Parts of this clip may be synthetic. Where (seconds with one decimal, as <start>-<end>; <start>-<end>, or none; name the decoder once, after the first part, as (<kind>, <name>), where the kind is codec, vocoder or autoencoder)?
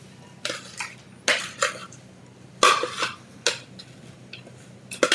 none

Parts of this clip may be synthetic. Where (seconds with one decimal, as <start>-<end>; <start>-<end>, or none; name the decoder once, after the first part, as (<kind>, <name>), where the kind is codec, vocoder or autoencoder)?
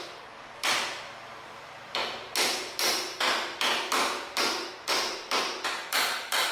0.0-2.0 (vocoder, BigVGAN v2); 4.7-6.5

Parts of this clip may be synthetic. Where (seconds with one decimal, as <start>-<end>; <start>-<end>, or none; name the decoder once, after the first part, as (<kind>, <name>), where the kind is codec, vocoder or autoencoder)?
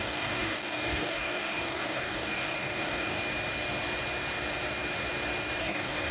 0.0-3.2 (codec, DAC); 5.6-6.1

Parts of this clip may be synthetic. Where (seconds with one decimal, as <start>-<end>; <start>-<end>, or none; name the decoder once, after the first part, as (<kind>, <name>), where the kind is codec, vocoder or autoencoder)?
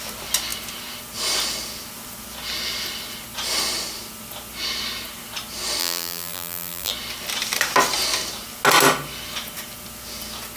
5.8-6.9 (vocoder, BigVGAN v2)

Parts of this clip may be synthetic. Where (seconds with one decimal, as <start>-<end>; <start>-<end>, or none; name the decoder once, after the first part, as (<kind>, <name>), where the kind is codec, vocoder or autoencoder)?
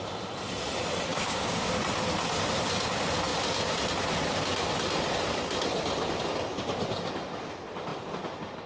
1.1-1.7 (codec, DAC)